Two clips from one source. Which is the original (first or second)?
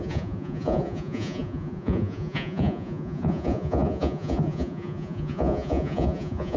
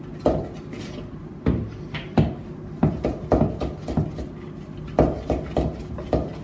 second